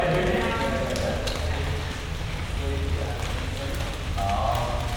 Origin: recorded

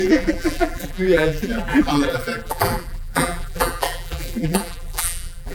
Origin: remade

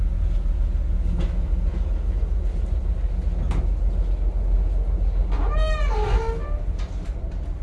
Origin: recorded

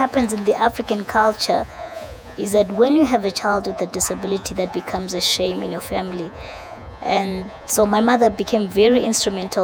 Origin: remade